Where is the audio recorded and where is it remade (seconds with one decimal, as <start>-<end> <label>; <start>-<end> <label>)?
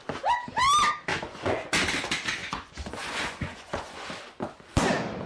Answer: 0.0-1.1 recorded; 1.1-1.7 remade; 1.7-2.4 recorded; 2.4-4.0 remade; 4.0-5.3 recorded